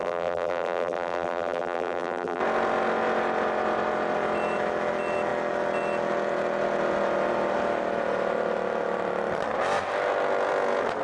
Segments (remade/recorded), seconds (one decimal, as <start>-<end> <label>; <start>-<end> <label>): 0.0-2.4 remade; 2.4-11.0 recorded